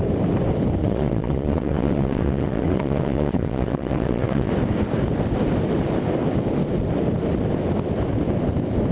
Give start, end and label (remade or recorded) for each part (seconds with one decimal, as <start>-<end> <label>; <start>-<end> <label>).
0.0-0.8 recorded; 0.8-4.5 remade; 4.5-8.9 recorded